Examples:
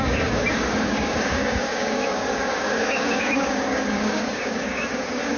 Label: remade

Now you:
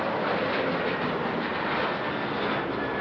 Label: recorded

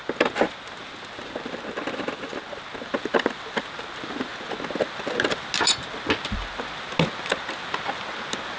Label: recorded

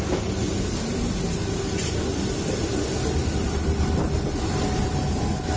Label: recorded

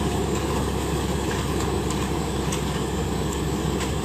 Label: remade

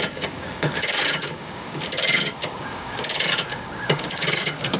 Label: remade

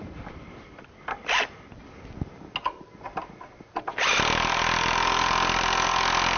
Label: recorded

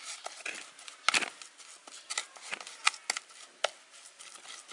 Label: recorded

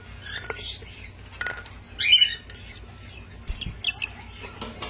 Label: recorded